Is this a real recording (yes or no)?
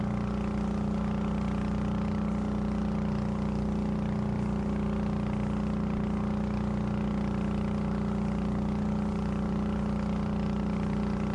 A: yes